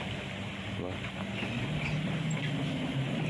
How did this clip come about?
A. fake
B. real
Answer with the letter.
B